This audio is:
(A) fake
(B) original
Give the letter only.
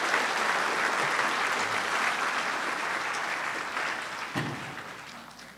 B